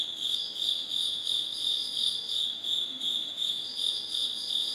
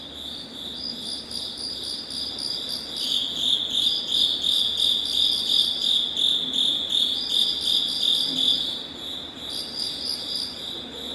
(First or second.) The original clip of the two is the second